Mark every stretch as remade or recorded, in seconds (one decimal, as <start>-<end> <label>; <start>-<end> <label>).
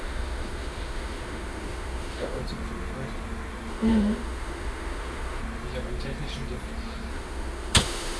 0.0-2.4 remade; 2.4-3.7 recorded; 3.7-5.4 remade; 5.4-7.1 recorded; 7.1-8.2 remade